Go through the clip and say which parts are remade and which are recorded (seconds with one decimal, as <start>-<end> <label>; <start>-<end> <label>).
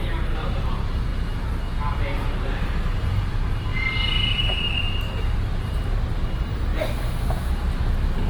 0.0-1.1 remade; 1.1-2.5 recorded; 2.5-8.3 remade